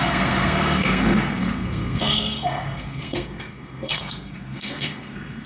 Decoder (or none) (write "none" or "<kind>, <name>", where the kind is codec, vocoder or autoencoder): codec, SNAC